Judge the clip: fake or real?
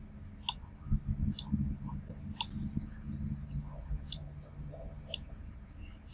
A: real